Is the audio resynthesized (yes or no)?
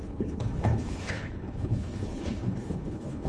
yes